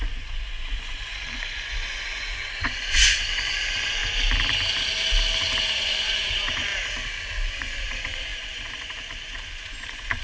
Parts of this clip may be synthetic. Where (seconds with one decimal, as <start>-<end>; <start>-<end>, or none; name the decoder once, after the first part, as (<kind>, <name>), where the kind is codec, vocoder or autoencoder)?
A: 0.0-4.0 (vocoder, Vocos); 5.7-6.7; 7.5-10.2